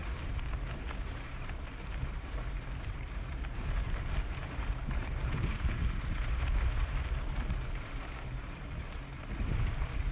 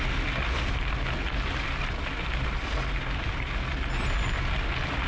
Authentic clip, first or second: second